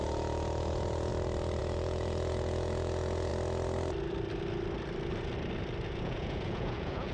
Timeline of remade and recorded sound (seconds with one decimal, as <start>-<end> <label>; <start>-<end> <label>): 0.0-1.1 remade; 1.1-1.6 recorded; 1.6-3.3 remade; 3.3-6.0 recorded; 6.0-7.1 remade